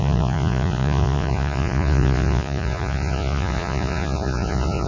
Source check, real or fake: fake